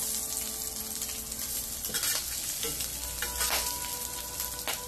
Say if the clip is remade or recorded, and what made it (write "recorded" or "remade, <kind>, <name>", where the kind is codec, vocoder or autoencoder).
recorded